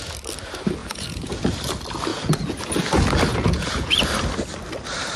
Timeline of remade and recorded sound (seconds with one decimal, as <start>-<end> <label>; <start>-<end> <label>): 0.0-0.8 recorded; 0.8-1.4 remade; 1.4-2.1 recorded; 2.1-2.6 remade; 2.6-3.3 recorded; 3.3-3.9 remade; 3.9-5.2 recorded